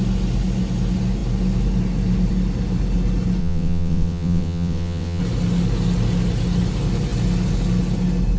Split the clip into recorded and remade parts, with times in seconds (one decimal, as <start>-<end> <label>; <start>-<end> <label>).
0.0-3.4 recorded; 3.4-5.2 remade; 5.2-8.4 recorded